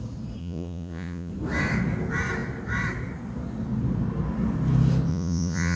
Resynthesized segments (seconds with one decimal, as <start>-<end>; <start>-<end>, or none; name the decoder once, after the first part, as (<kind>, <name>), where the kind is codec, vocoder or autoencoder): 0.4-1.3 (vocoder, Vocos); 5.1-5.8